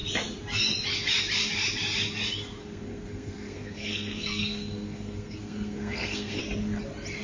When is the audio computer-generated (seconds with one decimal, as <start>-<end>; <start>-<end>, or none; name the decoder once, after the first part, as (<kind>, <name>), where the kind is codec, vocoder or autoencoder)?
2.6-6.4 (codec, SNAC)